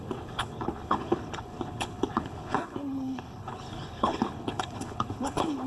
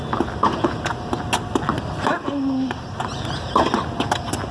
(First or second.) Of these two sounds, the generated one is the first